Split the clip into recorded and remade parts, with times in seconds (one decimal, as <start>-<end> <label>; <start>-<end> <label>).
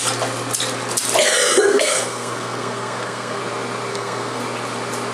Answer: 0.0-1.7 recorded; 1.7-3.4 remade; 3.4-3.9 recorded; 3.9-4.4 remade; 4.4-5.1 recorded